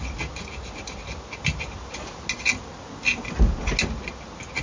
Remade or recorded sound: recorded